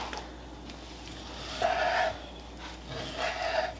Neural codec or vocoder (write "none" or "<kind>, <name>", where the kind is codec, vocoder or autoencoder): none